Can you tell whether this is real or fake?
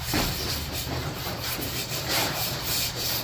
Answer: fake